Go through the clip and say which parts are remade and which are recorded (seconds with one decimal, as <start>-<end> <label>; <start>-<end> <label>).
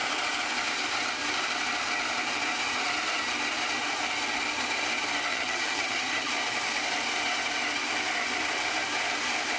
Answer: 0.0-5.3 recorded; 5.3-6.3 remade; 6.3-9.6 recorded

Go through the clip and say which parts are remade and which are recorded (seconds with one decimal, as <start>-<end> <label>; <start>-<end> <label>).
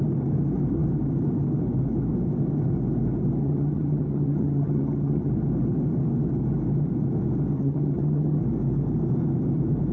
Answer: 0.0-3.4 recorded; 3.4-5.3 remade; 5.3-7.5 recorded; 7.5-8.4 remade; 8.4-9.9 recorded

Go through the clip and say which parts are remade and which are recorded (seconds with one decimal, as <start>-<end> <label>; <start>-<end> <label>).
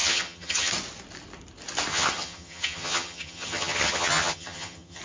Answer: 0.0-0.7 remade; 0.7-1.9 recorded; 1.9-5.0 remade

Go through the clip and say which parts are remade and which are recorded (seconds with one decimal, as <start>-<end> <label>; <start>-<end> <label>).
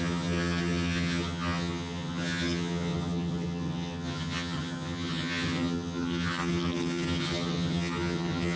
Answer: 0.0-8.6 remade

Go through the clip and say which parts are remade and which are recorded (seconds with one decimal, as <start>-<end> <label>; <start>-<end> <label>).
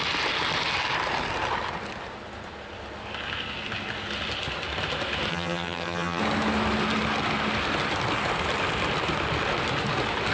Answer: 0.0-5.3 recorded; 5.3-6.2 remade; 6.2-10.3 recorded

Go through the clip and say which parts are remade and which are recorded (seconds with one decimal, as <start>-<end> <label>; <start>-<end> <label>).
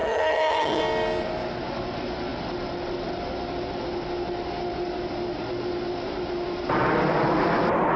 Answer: 0.0-0.8 remade; 0.8-8.0 recorded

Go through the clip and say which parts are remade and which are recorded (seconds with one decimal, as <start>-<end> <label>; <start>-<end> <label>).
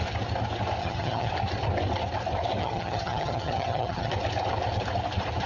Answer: 0.0-0.8 recorded; 0.8-1.3 remade; 1.3-2.6 recorded; 2.6-4.1 remade; 4.1-5.5 recorded